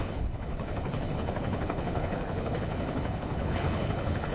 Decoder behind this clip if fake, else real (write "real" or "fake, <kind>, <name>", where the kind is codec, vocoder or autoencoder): fake, codec, HILCodec